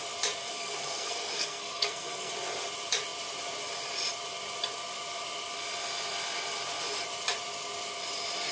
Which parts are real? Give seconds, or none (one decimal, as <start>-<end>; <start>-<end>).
0.0-0.4; 2.3-8.5